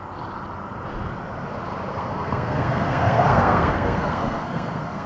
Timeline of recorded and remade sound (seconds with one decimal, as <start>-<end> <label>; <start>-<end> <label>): 0.0-1.9 recorded; 1.9-5.1 remade